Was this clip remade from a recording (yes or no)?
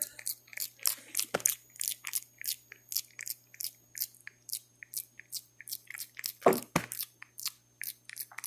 no